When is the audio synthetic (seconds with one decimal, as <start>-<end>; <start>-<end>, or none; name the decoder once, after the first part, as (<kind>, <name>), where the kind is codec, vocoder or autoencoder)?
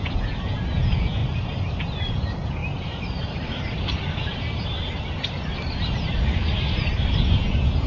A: 0.0-1.2 (vocoder, Vocos); 2.1-2.6; 7.3-7.9